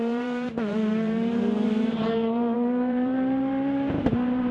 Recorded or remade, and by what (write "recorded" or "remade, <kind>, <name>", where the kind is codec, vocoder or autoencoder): remade, vocoder, BigVGAN v2